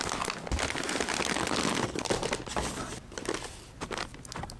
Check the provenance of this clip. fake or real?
real